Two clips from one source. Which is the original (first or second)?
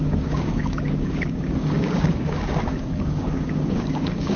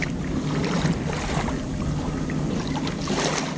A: second